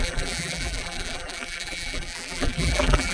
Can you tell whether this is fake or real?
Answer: fake